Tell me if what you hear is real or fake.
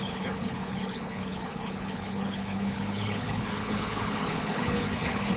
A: fake